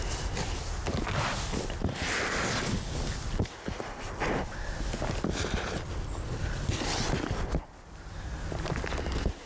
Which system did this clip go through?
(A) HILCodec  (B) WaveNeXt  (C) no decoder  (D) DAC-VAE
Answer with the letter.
C